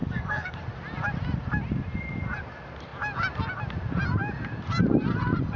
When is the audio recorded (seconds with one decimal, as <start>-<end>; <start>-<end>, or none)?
0.6-5.6